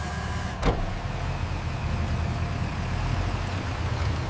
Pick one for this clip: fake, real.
real